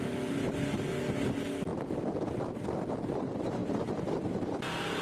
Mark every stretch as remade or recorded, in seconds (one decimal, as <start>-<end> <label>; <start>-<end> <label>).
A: 0.0-5.0 recorded